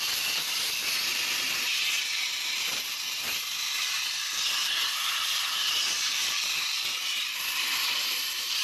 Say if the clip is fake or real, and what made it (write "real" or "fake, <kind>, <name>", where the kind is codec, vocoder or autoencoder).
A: fake, vocoder, BigVGAN v2